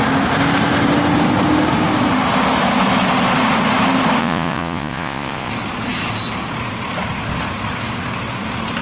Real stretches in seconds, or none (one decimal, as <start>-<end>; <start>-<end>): 0.0-4.2; 5.5-8.8